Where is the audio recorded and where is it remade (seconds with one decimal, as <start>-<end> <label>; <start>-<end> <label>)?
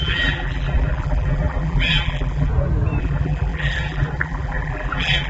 0.0-2.5 remade; 2.5-3.0 recorded; 3.0-5.3 remade